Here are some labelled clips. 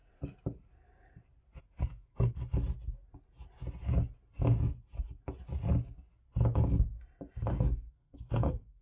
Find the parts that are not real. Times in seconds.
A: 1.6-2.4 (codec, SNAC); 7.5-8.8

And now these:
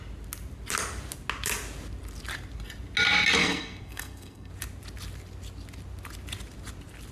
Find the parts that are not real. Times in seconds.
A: 3.4-4.5 (codec, SNAC)

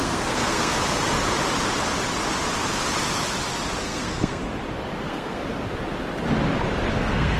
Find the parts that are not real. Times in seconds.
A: 0.0-0.7 (codec, SNAC); 3.8-4.4; 5.0-5.4; 6.9-7.4

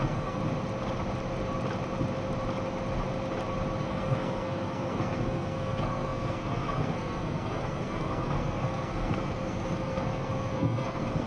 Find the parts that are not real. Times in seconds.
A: 0.0-0.4 (codec, SNAC); 3.8-11.3